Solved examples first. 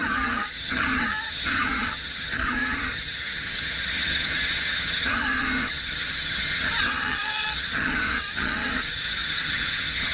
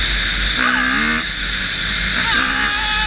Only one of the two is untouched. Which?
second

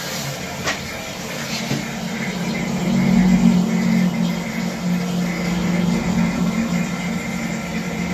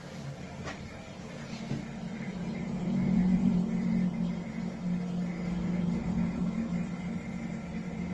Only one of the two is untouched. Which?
first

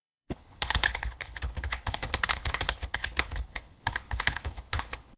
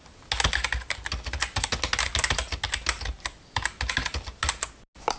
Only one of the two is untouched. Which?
second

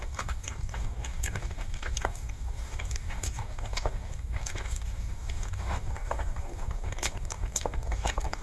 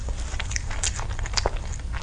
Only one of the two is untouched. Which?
second